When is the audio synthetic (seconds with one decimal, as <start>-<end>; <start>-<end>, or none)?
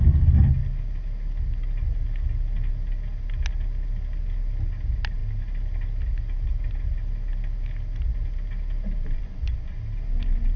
none